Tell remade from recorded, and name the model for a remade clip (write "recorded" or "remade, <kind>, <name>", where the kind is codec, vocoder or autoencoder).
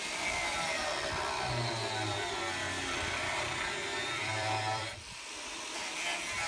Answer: remade, vocoder, BigVGAN v2